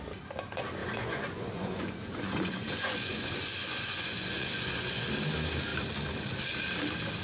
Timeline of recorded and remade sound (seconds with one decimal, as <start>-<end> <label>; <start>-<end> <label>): 0.0-0.8 recorded; 0.8-5.1 remade; 5.1-7.2 recorded